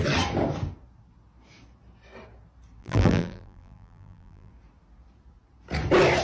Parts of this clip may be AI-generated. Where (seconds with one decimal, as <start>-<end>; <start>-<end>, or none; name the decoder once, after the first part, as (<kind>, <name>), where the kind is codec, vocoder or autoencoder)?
2.8-4.5 (vocoder, BigVGAN v2)